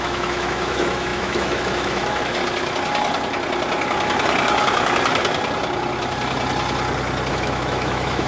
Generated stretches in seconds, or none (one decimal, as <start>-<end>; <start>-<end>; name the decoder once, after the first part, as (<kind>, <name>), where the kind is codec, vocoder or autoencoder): 0.0-2.4 (autoencoder, DAC-VAE); 7.3-8.3